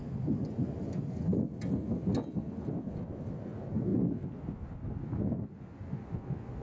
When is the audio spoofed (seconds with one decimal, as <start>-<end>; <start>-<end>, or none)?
none